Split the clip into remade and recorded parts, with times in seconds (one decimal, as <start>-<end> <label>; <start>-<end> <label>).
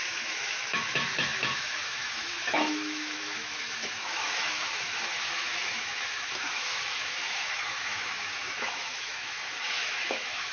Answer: 0.0-10.5 remade